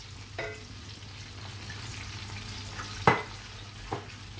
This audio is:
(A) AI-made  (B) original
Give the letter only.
B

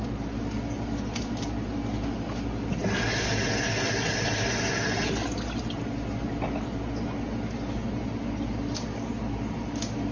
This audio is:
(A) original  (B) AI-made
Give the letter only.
A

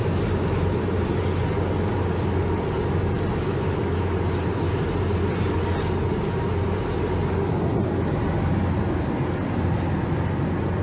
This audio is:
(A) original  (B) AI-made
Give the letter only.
A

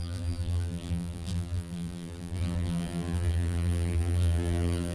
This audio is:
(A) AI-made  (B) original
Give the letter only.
A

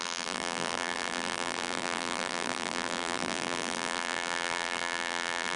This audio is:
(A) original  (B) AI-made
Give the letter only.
B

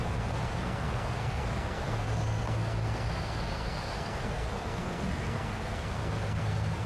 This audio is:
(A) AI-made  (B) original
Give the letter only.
A